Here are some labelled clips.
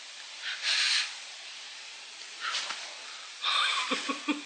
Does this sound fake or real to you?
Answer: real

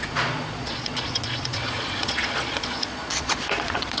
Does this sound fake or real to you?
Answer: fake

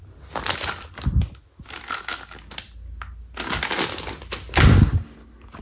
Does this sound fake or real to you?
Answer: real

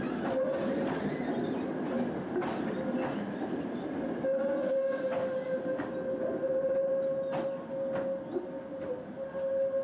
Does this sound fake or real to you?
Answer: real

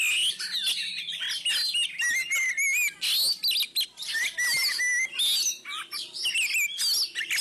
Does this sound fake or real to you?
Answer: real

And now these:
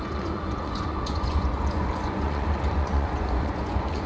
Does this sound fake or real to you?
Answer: fake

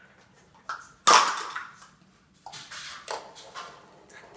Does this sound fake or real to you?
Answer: real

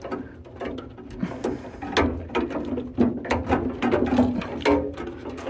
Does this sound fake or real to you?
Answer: real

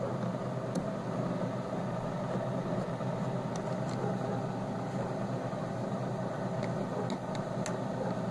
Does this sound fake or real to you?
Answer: real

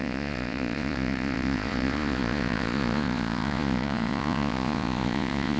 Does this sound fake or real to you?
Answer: fake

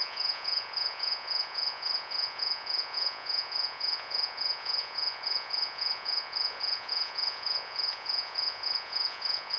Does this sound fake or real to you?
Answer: fake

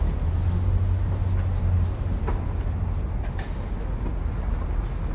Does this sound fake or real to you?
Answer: real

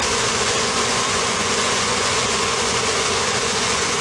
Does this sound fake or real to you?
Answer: fake